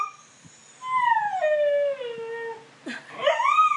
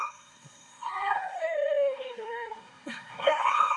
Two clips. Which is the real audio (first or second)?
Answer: first